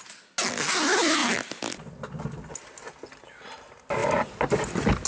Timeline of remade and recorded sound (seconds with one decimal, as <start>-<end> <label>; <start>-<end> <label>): 0.0-5.1 recorded